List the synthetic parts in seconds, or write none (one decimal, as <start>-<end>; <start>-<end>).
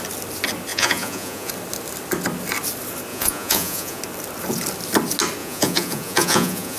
0.7-1.5; 3.1-4.0; 5.4-6.8